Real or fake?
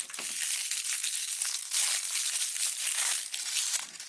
real